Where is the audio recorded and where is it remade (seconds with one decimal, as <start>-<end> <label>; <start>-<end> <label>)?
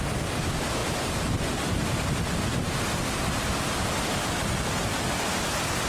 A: 0.0-5.9 recorded